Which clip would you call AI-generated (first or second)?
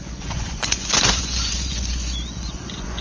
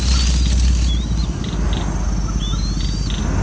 first